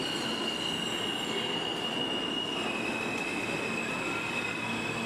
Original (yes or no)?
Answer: yes